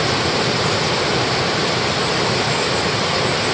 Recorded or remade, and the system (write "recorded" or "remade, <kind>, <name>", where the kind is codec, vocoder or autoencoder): recorded